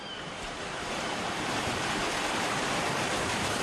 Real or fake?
fake